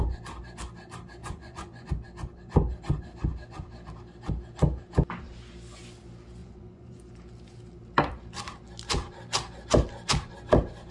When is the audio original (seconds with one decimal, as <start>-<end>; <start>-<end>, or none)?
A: 0.0-1.2; 1.9-6.4; 7.1-10.9